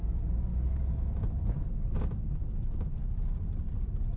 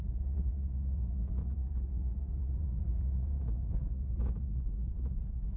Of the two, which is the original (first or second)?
first